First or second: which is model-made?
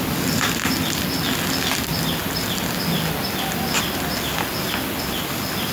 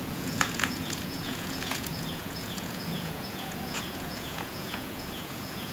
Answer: second